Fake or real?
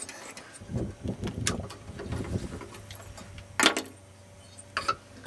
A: real